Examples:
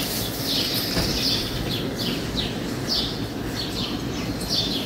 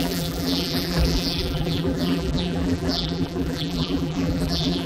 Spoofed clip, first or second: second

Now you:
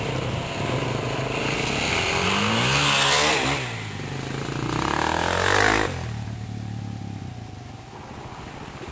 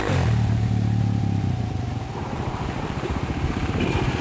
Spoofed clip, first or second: second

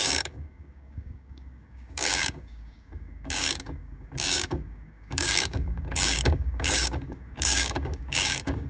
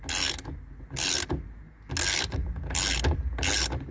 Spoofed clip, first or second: first